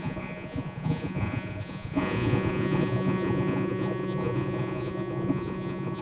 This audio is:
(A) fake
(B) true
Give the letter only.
A